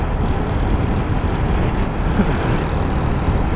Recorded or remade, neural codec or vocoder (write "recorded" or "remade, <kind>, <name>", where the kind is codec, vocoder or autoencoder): recorded